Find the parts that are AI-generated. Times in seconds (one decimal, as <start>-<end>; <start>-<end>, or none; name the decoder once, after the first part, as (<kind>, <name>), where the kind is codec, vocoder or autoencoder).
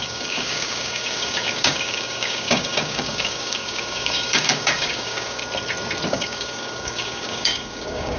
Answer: 0.0-5.4 (codec, DAC); 6.1-8.2